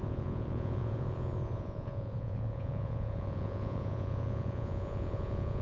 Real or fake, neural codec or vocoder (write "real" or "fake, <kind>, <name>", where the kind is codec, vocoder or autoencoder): fake, vocoder, Vocos